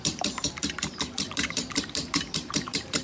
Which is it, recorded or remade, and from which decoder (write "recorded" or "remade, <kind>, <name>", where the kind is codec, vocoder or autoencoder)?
remade, vocoder, BigVGAN v2